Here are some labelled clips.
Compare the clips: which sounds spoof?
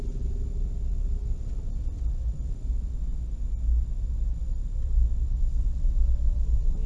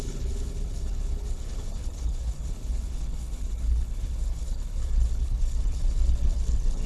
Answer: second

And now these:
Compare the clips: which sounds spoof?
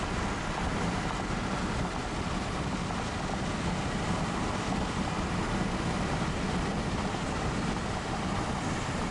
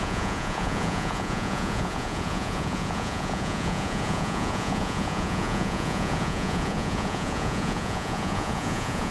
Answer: second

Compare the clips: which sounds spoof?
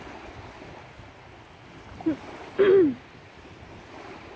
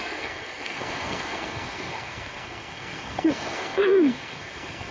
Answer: second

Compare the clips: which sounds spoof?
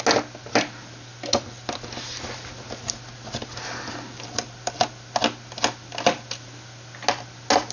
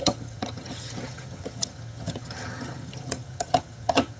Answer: second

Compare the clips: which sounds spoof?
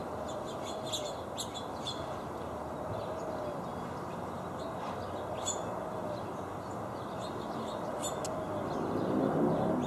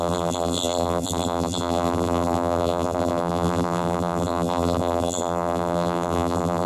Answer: second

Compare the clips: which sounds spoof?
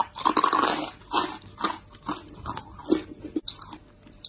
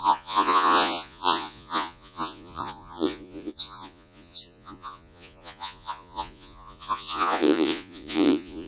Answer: second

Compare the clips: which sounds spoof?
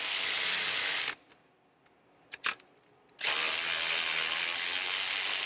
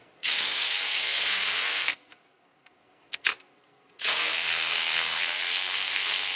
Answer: second